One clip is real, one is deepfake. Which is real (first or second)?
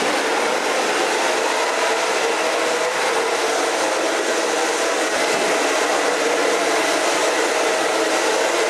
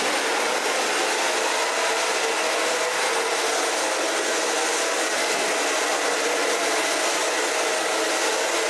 second